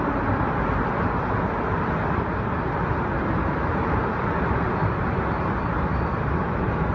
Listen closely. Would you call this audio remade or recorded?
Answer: recorded